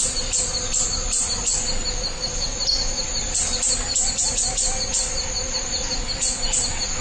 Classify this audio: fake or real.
real